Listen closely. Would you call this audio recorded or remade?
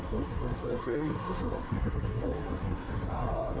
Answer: remade